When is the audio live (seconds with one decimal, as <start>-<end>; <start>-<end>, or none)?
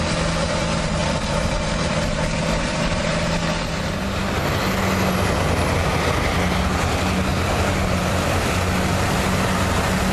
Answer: 0.0-1.0; 3.4-7.3; 8.4-10.1